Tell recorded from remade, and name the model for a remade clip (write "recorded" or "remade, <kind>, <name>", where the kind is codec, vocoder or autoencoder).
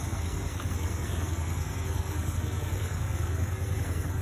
remade, codec, SNAC